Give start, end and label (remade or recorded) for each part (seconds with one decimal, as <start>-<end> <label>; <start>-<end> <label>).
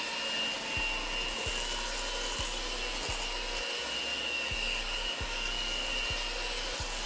0.0-4.1 recorded; 4.1-6.0 remade; 6.0-7.1 recorded